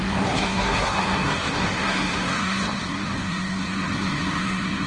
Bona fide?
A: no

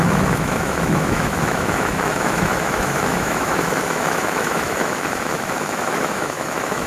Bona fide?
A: no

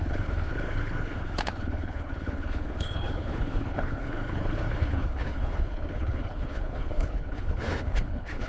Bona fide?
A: no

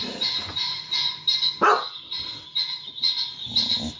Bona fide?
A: yes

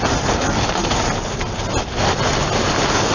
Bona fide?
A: yes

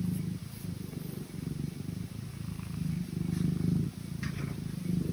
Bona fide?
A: yes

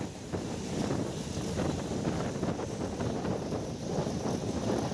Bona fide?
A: yes